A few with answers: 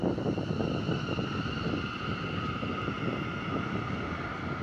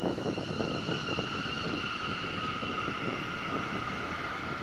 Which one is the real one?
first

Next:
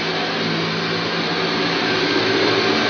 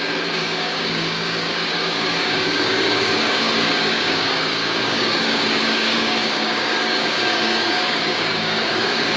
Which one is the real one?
first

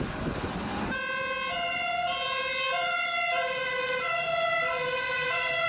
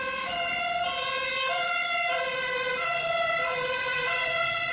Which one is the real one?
first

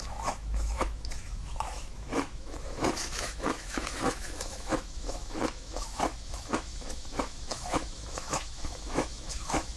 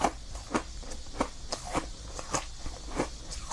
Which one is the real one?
second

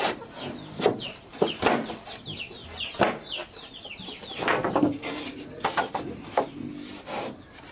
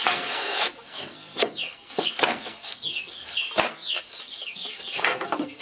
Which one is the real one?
first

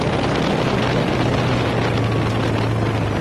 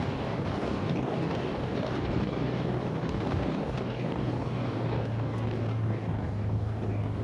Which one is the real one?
first